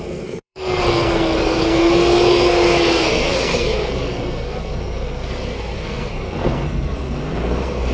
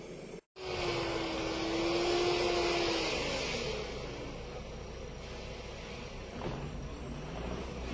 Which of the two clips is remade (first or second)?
first